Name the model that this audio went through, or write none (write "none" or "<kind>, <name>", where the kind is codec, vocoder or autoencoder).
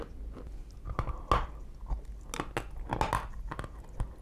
none